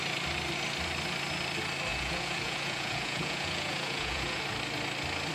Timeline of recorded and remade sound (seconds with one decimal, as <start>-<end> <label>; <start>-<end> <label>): 0.0-1.9 recorded; 1.9-4.4 remade; 4.4-5.3 recorded